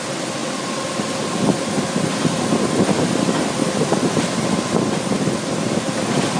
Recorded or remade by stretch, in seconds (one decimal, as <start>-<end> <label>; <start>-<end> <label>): 0.0-6.4 recorded